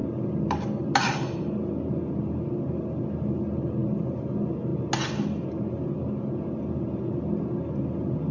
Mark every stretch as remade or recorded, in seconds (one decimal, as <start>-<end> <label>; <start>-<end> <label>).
0.0-8.3 recorded